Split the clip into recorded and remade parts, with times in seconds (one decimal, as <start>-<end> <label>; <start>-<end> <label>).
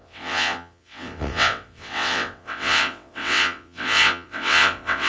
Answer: 0.0-5.1 remade